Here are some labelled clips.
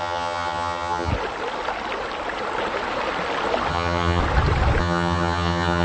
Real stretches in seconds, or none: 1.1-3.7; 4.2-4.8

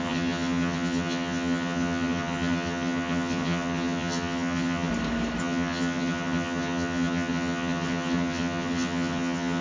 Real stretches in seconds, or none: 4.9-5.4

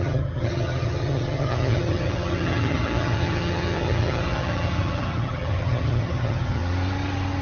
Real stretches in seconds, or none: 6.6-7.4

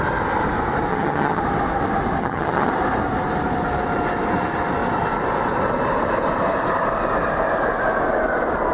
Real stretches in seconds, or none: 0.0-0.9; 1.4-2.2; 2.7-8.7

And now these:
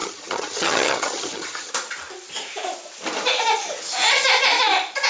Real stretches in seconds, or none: 1.7-5.1

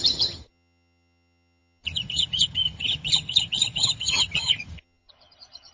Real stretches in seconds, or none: none